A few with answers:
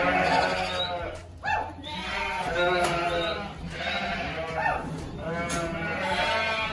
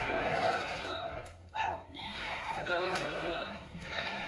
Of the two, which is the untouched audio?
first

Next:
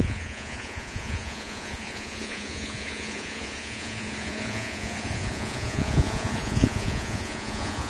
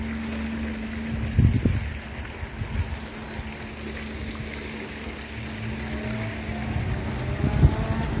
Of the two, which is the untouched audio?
second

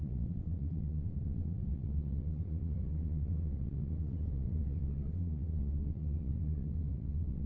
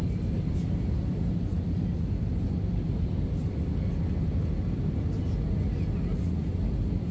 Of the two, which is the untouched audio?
second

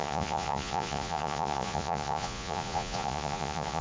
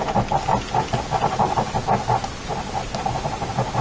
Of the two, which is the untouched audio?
second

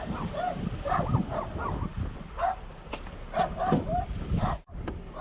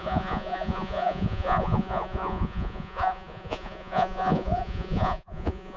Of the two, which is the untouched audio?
first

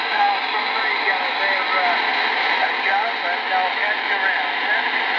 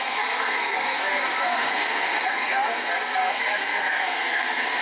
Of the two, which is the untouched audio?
first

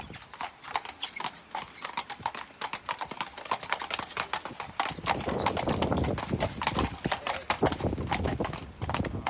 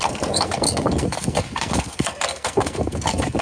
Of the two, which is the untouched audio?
first